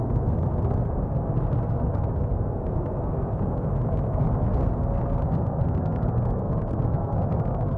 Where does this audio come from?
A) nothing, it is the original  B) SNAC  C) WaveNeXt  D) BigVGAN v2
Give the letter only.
B